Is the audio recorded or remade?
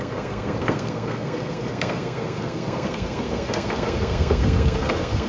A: remade